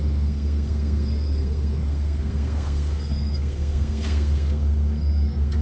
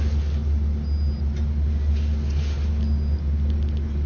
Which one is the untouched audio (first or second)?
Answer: second